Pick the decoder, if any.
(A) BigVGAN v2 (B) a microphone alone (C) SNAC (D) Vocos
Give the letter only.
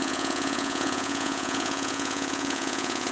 D